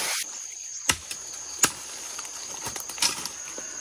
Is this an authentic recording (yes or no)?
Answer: yes